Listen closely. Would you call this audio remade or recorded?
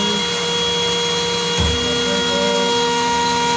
recorded